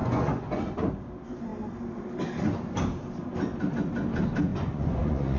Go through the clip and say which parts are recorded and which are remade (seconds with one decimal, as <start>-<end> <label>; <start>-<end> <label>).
0.0-0.6 remade; 0.6-4.5 recorded; 4.5-5.4 remade